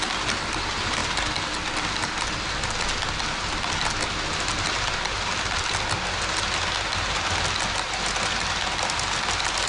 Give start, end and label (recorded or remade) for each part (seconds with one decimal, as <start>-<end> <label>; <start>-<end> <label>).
0.0-9.7 recorded